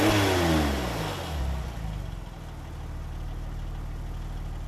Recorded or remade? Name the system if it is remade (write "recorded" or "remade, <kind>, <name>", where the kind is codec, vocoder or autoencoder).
recorded